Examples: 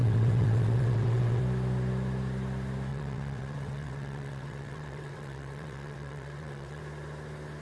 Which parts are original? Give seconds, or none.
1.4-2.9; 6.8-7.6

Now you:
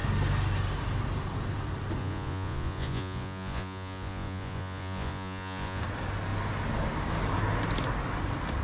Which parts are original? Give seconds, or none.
0.0-2.0; 5.8-8.6